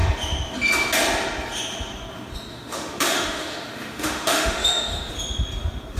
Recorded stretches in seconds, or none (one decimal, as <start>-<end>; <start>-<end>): 0.0-2.5; 5.1-6.0